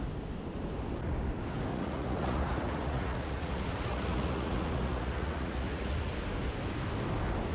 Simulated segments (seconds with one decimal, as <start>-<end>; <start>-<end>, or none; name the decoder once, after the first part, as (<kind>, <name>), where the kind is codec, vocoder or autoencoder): 1.7-6.1 (vocoder, Vocos)